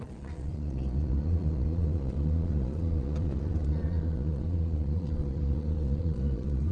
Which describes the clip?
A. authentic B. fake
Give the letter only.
B